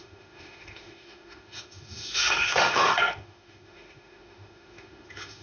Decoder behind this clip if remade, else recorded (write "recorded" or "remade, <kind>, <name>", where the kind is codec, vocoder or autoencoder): remade, autoencoder, DAC-VAE